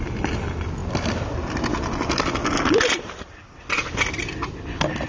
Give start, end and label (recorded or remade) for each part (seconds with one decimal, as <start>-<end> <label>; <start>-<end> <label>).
0.0-5.1 recorded